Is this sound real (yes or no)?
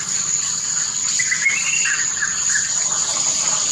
yes